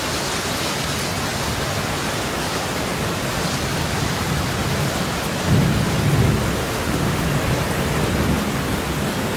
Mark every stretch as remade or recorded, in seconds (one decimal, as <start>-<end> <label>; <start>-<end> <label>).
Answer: 0.0-6.6 recorded; 6.6-7.3 remade; 7.3-9.4 recorded